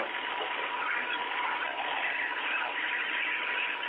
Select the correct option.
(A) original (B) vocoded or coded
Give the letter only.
A